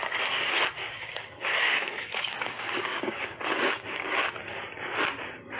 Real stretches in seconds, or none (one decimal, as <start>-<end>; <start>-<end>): 0.0-0.8; 4.2-5.6